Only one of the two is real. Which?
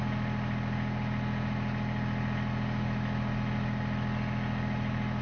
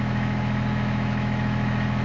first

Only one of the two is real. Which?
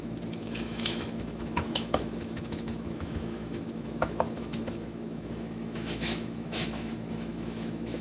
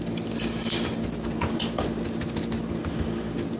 second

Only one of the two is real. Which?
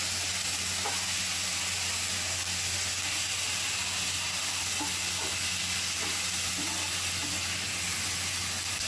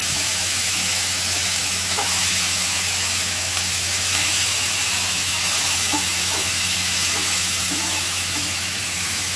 first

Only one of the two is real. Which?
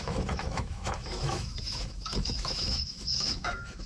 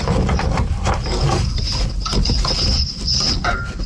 second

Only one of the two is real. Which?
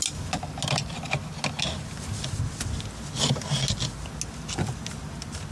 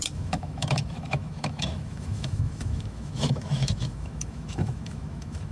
first